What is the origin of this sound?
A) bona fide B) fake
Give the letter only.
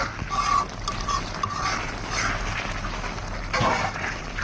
A